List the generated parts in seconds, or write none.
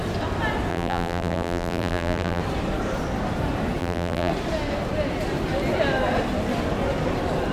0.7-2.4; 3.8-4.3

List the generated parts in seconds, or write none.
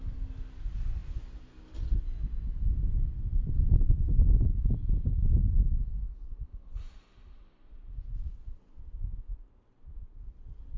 none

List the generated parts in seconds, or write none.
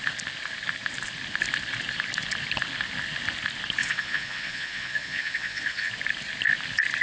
3.8-5.9